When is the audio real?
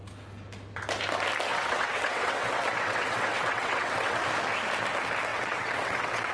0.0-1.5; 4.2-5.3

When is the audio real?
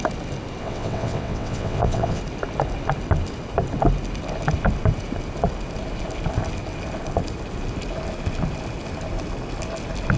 0.0-0.6; 2.2-10.2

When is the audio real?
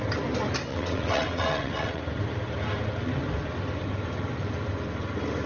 0.0-0.7; 2.0-5.5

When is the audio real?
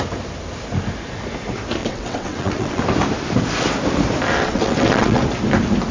0.0-1.8; 2.8-4.4; 5.2-5.9